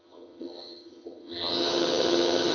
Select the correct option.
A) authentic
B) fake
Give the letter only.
B